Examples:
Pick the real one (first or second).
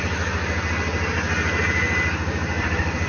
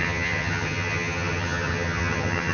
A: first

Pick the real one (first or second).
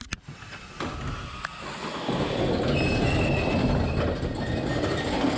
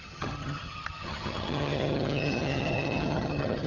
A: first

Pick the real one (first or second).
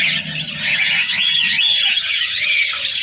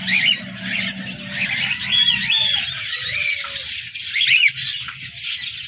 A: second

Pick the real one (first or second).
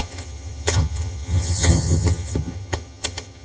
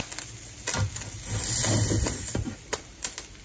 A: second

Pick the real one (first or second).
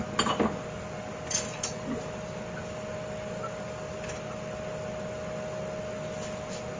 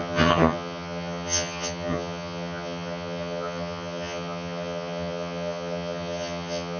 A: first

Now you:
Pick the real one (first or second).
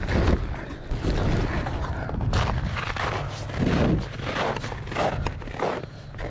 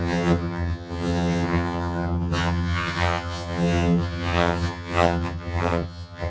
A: first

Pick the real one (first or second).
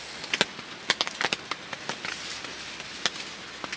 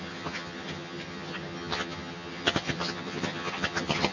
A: first